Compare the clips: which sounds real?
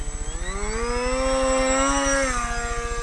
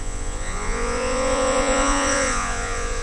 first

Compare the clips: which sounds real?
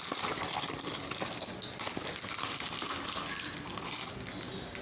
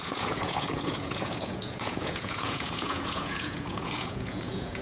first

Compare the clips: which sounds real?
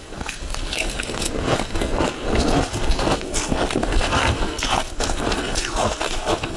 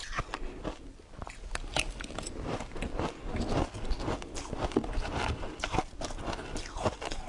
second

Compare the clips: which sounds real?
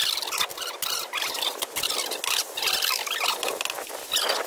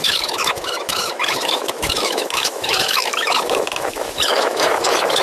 first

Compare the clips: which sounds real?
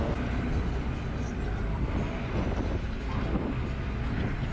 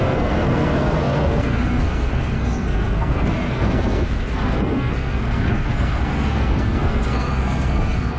first